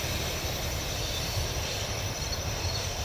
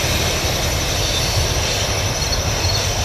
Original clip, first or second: second